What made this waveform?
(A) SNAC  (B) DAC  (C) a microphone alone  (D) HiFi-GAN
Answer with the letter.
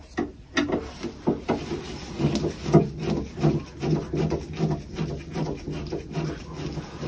C